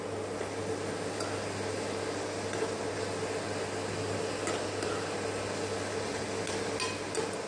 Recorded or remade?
recorded